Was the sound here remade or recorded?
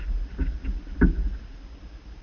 recorded